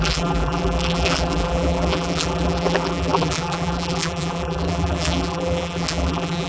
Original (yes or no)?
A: no